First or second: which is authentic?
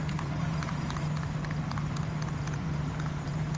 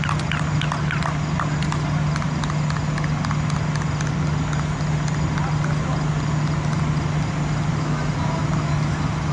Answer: second